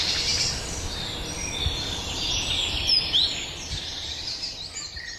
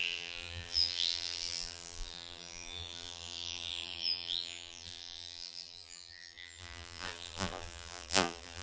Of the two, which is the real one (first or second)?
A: first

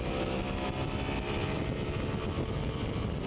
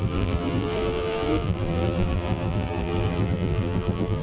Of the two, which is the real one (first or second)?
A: first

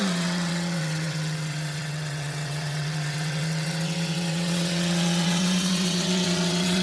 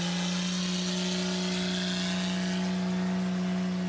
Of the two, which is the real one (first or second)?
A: second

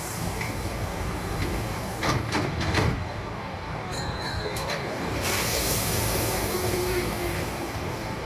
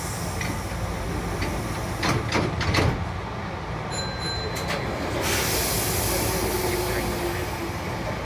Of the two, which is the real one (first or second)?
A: second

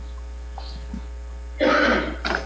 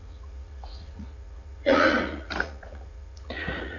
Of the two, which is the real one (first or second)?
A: first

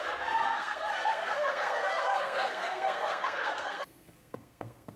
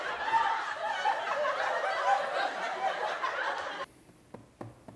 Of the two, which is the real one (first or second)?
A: second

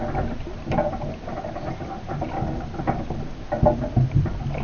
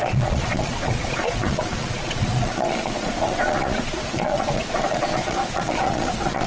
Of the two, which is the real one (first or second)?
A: first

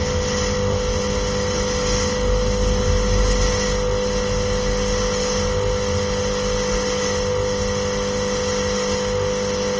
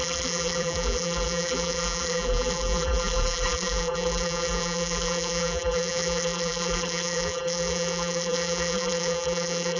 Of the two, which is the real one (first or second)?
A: first